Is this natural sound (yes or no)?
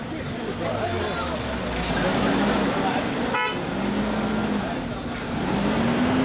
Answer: yes